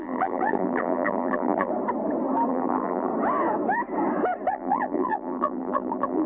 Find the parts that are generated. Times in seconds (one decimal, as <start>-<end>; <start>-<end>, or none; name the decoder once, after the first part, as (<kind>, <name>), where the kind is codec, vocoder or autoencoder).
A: 0.0-1.7 (vocoder, BigVGAN v2); 2.5-3.1; 4.5-6.3